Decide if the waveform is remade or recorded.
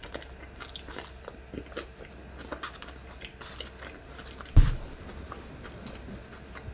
recorded